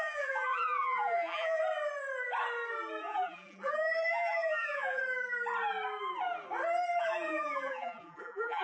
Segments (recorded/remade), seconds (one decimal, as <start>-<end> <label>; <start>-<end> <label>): 0.0-1.6 remade; 1.6-3.0 recorded; 3.0-5.0 remade; 5.0-7.0 recorded; 7.0-8.6 remade